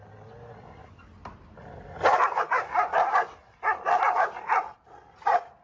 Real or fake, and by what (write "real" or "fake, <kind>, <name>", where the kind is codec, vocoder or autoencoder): real